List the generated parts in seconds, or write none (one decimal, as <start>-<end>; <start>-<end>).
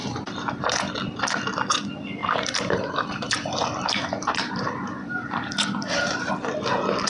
0.0-0.9; 2.2-6.3